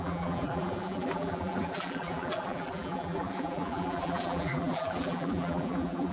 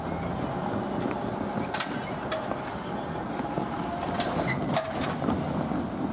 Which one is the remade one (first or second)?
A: first